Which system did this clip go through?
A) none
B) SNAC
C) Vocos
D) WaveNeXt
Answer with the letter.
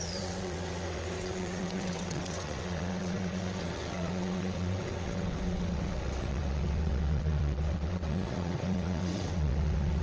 D